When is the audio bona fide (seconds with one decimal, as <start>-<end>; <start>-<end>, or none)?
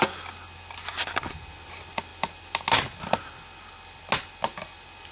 0.0-5.1